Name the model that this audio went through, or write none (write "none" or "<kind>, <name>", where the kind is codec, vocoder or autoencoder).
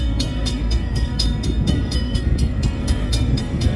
codec, SNAC